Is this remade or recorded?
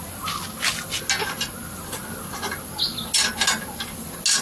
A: recorded